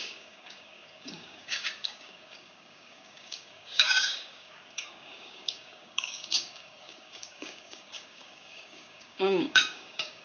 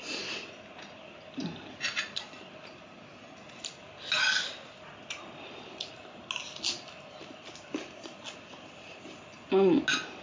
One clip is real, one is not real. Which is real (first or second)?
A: second